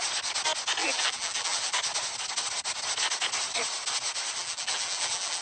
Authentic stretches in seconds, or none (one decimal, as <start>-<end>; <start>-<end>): 0.0-0.8; 1.7-4.4

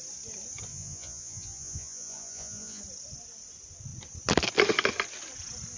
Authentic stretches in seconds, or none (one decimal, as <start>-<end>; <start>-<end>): 0.0-0.7; 2.8-5.8

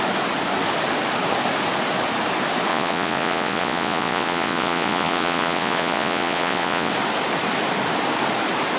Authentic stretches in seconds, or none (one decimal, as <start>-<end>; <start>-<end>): 0.0-2.7; 6.9-8.8

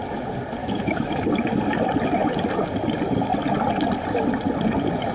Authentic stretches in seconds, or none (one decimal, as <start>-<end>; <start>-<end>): 0.0-0.6; 1.2-5.1

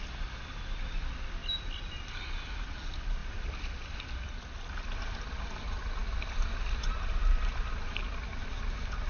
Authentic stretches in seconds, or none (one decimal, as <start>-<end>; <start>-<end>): 0.0-3.2; 5.6-9.1

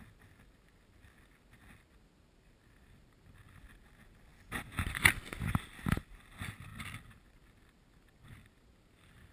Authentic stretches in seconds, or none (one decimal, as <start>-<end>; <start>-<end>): 0.0-9.3

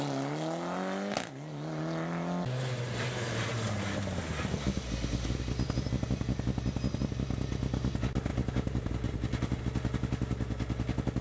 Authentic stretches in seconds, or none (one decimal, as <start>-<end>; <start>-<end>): 0.0-8.3; 9.6-11.2